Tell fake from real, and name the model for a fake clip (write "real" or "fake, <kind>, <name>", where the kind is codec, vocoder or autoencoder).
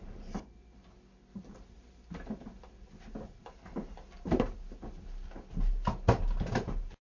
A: real